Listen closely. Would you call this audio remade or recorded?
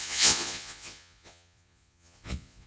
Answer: remade